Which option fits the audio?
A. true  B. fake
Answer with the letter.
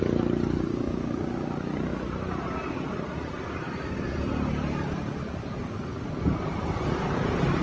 A